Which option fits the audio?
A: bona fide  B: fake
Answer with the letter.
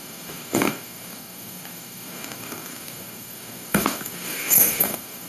B